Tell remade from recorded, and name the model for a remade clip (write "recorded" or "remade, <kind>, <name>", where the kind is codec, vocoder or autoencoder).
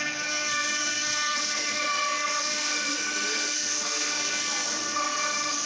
remade, codec, SNAC